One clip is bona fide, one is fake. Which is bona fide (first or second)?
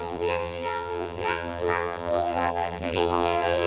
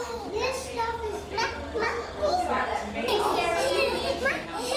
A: second